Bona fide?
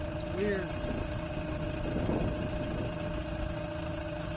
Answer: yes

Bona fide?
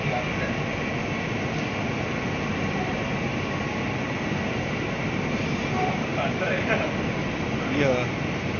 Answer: yes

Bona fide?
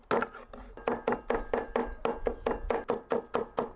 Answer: yes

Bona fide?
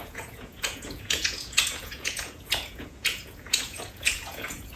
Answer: no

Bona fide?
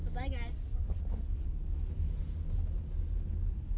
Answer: yes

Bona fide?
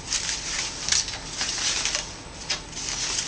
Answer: yes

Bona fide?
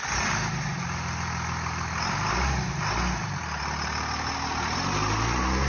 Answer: yes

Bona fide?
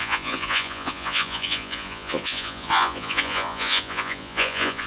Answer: no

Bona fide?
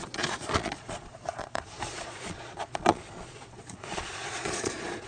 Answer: no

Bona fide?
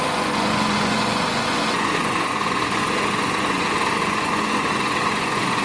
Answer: no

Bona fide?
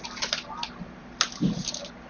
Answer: yes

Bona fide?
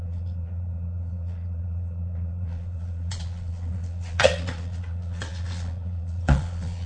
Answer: no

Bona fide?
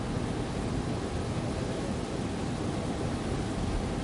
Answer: yes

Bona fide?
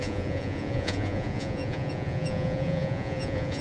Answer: no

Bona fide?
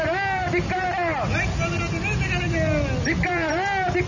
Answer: yes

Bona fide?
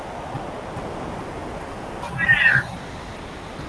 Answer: yes